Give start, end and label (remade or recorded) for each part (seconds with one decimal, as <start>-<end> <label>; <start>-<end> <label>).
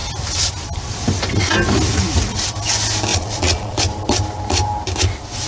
0.0-3.1 recorded; 3.1-3.8 remade; 3.8-5.5 recorded